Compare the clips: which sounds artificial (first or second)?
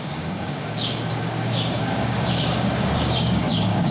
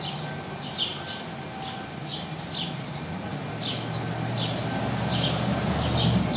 first